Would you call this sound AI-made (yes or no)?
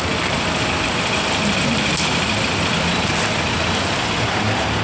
no